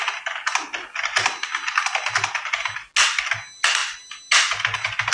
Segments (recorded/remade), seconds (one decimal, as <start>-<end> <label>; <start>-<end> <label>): 0.0-5.1 recorded